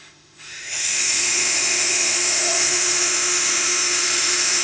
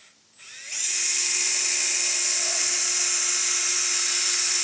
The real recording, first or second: second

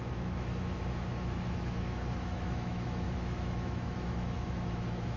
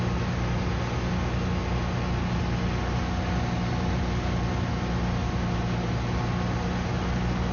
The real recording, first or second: second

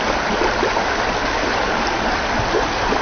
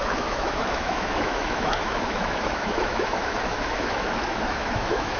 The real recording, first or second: first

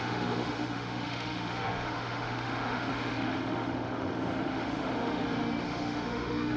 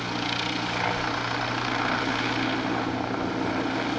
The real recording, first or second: second